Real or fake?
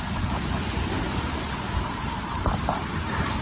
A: fake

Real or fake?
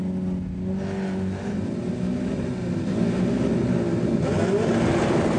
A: real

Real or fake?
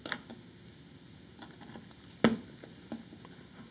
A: real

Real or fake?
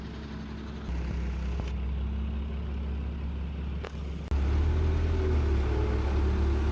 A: real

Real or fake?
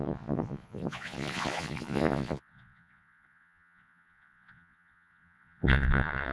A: fake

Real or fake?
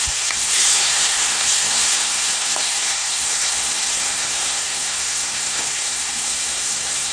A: fake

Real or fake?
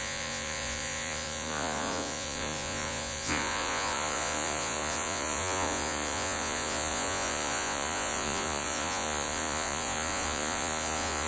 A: fake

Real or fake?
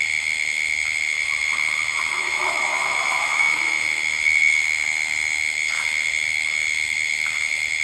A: fake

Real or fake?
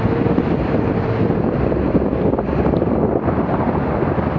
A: fake